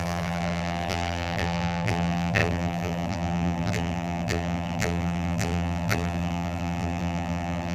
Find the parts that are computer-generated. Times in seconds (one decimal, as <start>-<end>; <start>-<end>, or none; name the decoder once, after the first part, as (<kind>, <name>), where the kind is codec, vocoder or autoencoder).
0.0-7.7 (vocoder, BigVGAN v2)